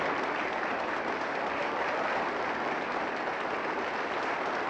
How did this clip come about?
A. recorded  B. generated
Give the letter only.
A